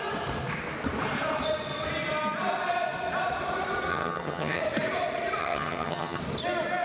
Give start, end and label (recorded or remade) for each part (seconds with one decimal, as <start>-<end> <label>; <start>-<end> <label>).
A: 0.0-3.9 recorded; 3.9-4.6 remade; 4.6-5.4 recorded; 5.4-6.2 remade; 6.2-6.8 recorded